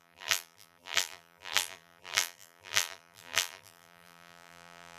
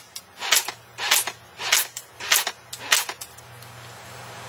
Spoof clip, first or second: first